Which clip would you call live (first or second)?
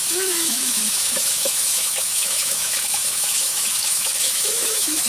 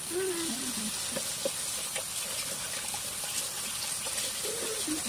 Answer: second